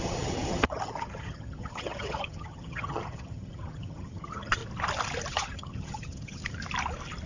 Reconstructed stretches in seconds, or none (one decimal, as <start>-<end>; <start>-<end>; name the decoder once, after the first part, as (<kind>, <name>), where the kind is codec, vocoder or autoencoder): 0.0-4.6 (vocoder, HiFi-GAN); 5.3-6.4

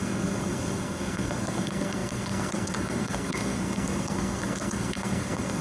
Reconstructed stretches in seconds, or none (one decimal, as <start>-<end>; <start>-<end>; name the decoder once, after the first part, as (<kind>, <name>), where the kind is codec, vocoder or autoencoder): 0.0-5.6 (codec, SNAC)

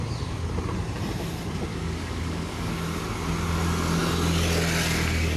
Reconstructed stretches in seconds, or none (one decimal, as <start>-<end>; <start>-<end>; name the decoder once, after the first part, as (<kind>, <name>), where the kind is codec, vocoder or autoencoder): 1.7-2.7 (codec, DAC)

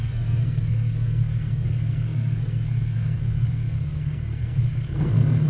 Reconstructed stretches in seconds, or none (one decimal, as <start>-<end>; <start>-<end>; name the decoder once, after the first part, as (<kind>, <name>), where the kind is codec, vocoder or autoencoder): 0.0-5.5 (codec, SNAC)

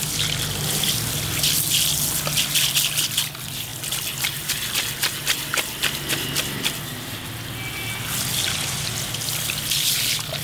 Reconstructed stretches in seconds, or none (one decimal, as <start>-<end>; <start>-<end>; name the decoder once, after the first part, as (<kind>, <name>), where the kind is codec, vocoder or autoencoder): none

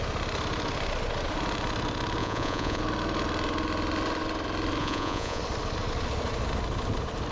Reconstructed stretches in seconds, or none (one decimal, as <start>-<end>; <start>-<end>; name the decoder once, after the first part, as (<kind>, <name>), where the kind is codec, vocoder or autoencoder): 2.2-2.8 (vocoder, Vocos); 4.8-5.4

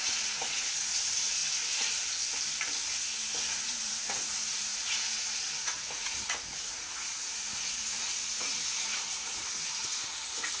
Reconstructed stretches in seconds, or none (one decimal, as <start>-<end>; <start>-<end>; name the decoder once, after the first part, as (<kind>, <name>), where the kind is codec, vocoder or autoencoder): 0.0-1.4 (vocoder, Vocos); 3.5-10.6